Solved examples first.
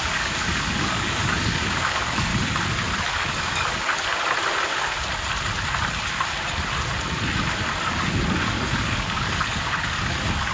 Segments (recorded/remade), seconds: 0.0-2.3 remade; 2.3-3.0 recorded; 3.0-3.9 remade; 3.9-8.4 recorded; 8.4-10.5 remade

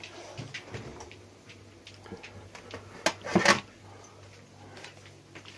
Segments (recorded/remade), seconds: 0.0-5.6 recorded

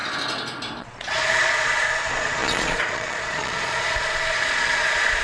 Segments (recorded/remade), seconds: 0.0-0.8 recorded; 0.8-5.2 remade